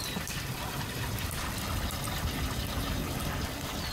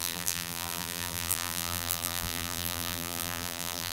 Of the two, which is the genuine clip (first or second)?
first